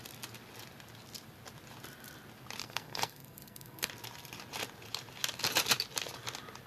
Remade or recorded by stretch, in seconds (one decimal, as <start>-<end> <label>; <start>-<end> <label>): 0.0-2.6 recorded; 2.6-3.9 remade; 3.9-6.7 recorded